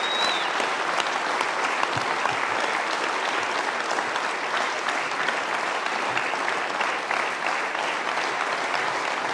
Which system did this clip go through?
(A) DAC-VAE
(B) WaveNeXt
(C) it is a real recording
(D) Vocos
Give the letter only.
C